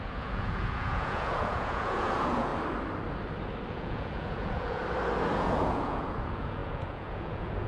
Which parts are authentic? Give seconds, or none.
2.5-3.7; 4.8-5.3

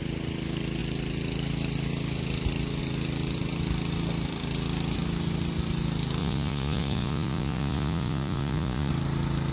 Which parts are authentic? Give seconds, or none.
0.0-6.2; 8.9-9.5

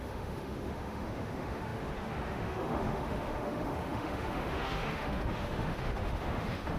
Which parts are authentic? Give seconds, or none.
none

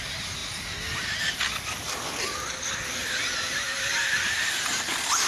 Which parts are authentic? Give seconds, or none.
0.0-5.3

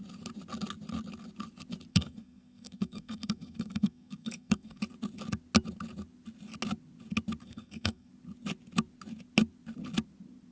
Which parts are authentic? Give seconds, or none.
0.0-1.9; 4.8-7.4; 8.1-10.5